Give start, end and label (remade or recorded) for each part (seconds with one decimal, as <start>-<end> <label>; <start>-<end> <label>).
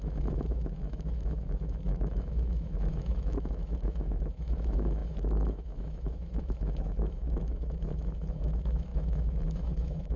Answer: 0.0-10.2 remade